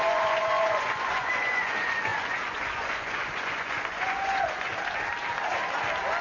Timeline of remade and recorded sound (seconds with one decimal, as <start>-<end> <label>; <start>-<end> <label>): 0.0-4.7 remade; 4.7-6.2 recorded